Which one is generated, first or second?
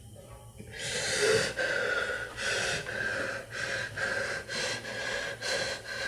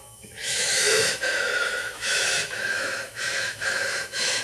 second